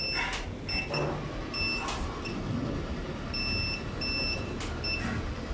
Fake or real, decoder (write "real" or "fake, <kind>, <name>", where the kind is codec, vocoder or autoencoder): real